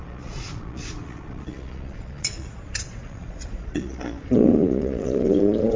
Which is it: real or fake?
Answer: fake